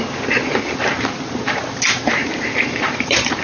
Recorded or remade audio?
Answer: remade